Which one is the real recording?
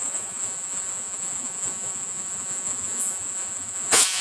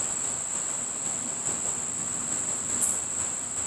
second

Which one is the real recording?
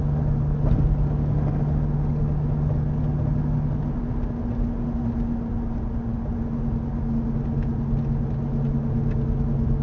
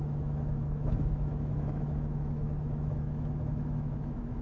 first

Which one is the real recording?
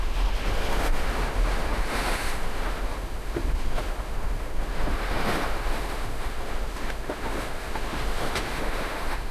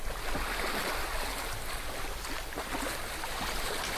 second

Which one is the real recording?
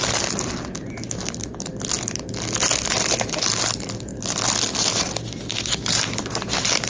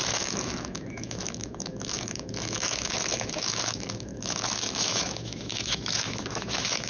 first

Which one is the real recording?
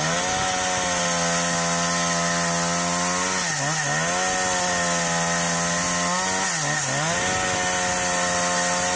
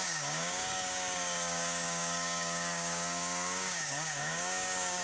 first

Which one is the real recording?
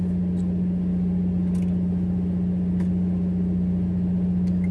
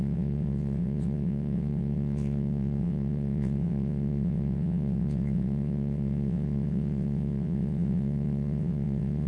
first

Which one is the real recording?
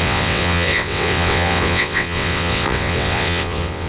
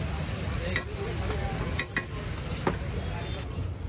second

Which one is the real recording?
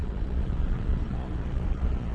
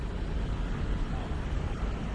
second